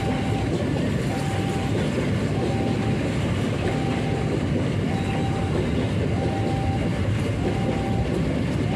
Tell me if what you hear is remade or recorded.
recorded